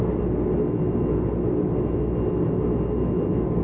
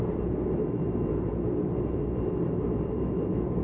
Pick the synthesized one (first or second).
second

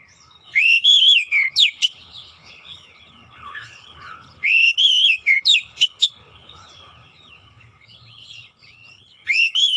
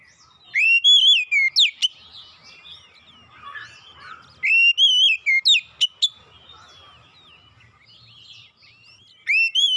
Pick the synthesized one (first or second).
first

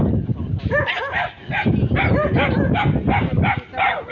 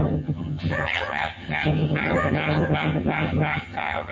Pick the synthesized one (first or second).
second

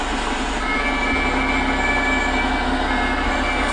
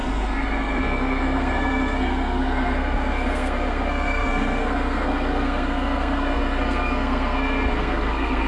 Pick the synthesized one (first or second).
second